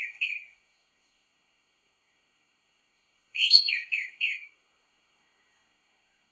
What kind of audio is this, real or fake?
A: fake